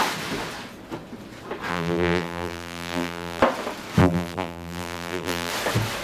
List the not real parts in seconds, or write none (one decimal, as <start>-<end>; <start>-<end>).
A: 1.7-3.4; 4.0-5.5